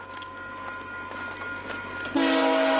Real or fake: real